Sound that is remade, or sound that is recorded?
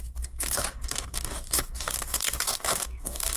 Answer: remade